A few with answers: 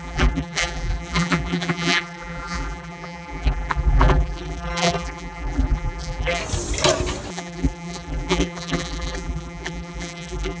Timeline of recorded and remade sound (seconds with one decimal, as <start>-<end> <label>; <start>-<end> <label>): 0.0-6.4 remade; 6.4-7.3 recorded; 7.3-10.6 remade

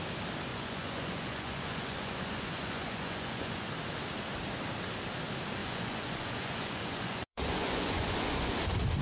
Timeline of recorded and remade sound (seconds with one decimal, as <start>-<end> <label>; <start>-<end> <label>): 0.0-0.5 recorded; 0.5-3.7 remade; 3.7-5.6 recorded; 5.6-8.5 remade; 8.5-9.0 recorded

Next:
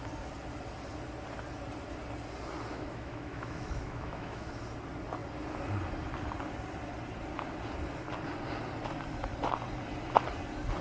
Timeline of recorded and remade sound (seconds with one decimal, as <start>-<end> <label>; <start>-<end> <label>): 0.0-2.7 recorded; 2.7-4.5 remade; 4.5-10.8 recorded

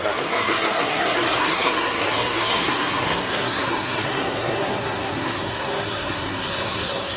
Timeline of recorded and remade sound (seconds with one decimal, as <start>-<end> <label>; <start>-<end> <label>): 0.0-7.2 remade

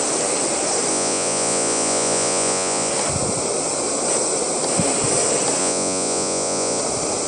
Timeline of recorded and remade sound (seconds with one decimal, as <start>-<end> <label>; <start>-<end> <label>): 0.0-0.9 recorded; 0.9-2.9 remade; 2.9-5.6 recorded; 5.6-6.8 remade; 6.8-7.3 recorded

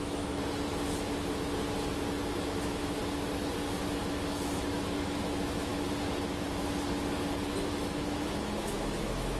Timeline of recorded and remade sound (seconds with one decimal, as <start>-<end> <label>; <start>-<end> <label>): 0.0-0.4 remade; 0.4-2.4 recorded; 2.4-3.0 remade; 3.0-4.0 recorded; 4.0-5.7 remade; 5.7-7.7 recorded; 7.7-9.4 remade

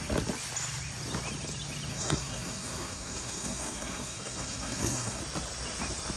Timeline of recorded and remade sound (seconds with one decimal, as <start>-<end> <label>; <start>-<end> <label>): 0.0-1.9 recorded; 1.9-5.2 remade; 5.2-6.2 recorded